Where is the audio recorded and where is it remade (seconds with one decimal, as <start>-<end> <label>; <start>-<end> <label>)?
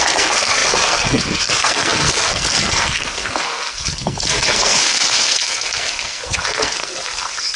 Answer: 0.0-7.6 remade